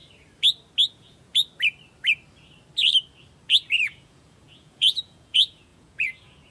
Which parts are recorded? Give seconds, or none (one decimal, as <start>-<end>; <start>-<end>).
0.0-0.9; 1.3-3.8